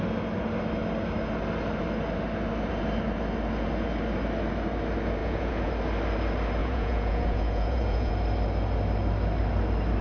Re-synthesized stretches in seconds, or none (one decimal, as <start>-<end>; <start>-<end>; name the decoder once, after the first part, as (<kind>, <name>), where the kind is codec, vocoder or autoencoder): 5.2-5.7 (vocoder, Vocos); 6.6-8.1